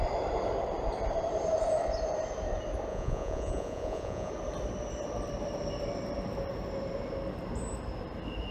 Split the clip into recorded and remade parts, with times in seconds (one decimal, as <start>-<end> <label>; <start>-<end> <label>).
0.0-2.9 recorded; 2.9-4.3 remade; 4.3-8.5 recorded